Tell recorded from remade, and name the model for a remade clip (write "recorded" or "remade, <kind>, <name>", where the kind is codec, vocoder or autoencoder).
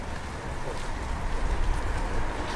recorded